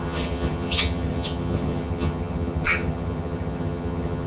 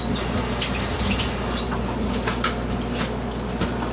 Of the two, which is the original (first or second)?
second